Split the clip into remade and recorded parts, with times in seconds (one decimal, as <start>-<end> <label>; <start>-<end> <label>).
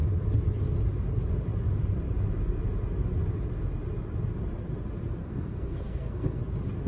0.0-5.2 recorded; 5.2-6.4 remade; 6.4-6.9 recorded